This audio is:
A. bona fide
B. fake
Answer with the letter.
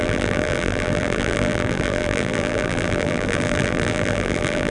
B